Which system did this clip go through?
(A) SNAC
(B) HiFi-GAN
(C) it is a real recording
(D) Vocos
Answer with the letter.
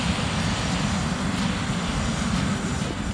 C